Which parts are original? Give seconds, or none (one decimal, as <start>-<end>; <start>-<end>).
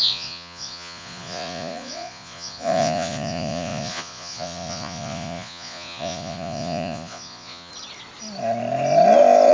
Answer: 7.7-9.5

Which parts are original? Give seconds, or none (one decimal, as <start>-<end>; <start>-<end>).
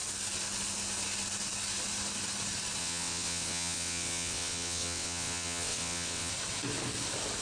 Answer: 0.0-2.8; 6.3-7.4